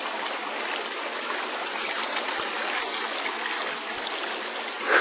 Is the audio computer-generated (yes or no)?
no